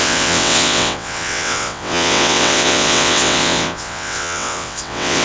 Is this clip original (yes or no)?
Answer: no